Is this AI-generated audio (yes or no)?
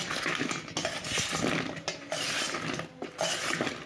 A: no